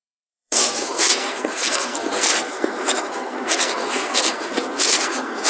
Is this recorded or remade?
remade